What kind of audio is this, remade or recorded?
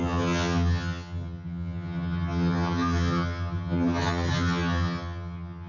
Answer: remade